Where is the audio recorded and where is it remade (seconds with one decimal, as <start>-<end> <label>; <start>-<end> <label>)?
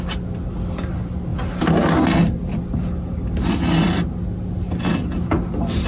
0.0-5.9 recorded